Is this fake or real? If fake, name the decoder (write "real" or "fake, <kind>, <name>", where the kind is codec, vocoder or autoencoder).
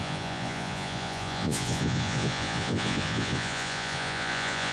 fake, vocoder, Vocos